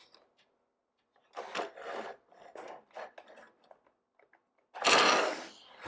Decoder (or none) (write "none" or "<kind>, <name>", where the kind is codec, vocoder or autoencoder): none